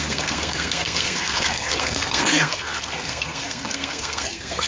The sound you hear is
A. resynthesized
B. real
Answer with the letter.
A